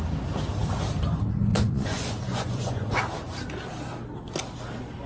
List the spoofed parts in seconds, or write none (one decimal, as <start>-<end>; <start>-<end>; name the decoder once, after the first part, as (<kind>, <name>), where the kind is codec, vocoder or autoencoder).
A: 1.5-3.0 (vocoder, Vocos)